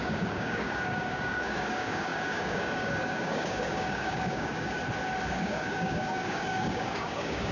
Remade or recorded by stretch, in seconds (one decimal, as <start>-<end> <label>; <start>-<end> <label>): 0.0-4.8 remade; 4.8-5.3 recorded; 5.3-7.5 remade